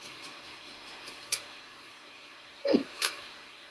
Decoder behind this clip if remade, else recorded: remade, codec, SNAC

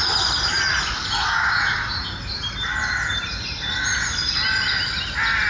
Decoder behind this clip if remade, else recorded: recorded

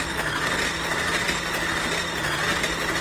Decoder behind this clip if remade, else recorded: recorded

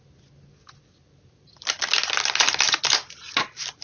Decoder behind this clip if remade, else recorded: recorded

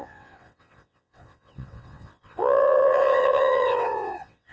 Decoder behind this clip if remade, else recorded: remade, vocoder, WaveNeXt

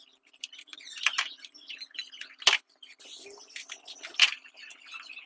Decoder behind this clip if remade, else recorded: remade, vocoder, BigVGAN v2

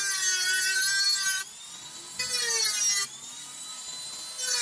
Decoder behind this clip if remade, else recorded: recorded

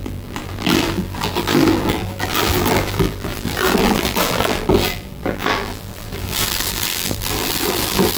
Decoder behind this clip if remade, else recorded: remade, vocoder, BigVGAN v2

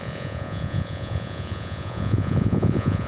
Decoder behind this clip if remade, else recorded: remade, vocoder, Vocos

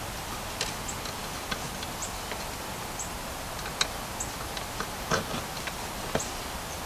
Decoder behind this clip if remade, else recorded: recorded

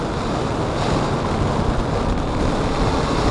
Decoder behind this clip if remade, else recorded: recorded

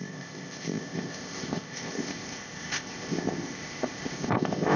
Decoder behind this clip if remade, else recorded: remade, codec, ZipCodec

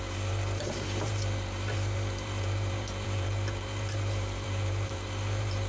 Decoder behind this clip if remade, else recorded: remade, vocoder, BigVGAN v2